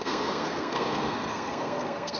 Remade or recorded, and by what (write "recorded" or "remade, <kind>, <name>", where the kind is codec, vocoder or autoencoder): remade, codec, SNAC